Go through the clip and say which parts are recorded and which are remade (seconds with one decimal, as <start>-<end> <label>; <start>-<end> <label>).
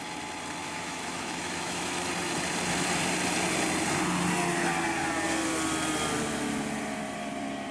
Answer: 0.0-0.6 recorded; 0.6-2.1 remade; 2.1-7.7 recorded